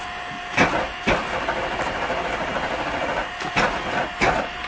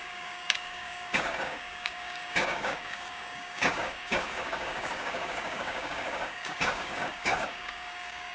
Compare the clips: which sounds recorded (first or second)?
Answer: first